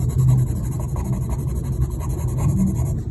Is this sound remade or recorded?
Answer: recorded